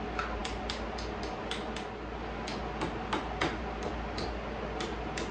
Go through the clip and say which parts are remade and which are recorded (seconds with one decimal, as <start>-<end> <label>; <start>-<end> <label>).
0.0-5.3 recorded